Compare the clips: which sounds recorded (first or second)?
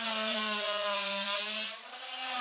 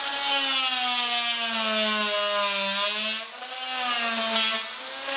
second